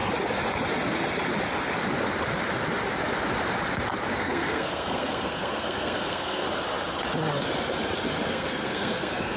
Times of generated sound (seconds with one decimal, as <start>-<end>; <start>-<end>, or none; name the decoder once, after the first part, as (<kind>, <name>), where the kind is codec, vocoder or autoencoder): 4.1-6.4 (codec, SNAC); 8.3-9.4